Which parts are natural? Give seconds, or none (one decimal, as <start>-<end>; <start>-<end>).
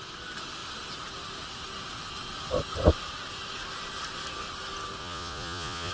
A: 0.0-5.0